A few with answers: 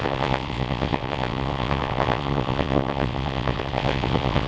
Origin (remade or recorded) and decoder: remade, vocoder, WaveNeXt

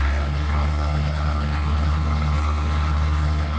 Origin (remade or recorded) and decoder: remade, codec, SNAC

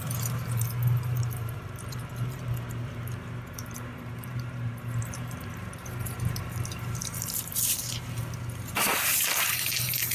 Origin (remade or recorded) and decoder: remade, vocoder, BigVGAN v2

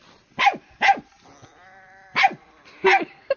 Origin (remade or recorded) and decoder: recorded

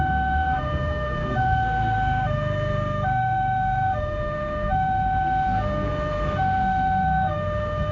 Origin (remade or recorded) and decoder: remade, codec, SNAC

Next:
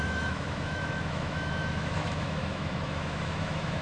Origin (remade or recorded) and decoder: remade, autoencoder, DAC-VAE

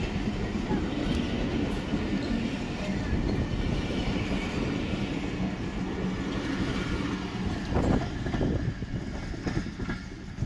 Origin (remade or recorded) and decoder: recorded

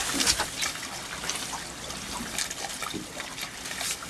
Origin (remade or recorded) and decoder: recorded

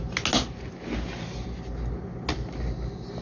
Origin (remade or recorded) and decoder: recorded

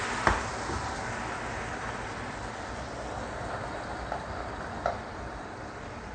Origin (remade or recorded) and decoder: recorded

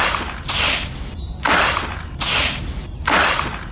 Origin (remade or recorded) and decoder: recorded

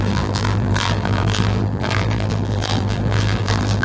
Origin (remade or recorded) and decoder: remade, vocoder, BigVGAN v2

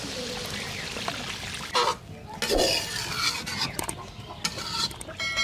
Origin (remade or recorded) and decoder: recorded